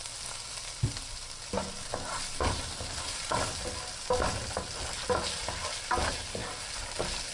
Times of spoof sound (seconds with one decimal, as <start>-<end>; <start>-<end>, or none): none